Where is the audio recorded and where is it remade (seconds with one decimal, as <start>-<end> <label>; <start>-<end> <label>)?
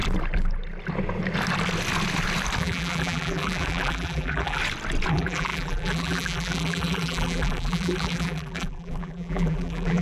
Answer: 0.0-2.6 recorded; 2.6-4.6 remade; 4.6-5.1 recorded; 5.1-10.0 remade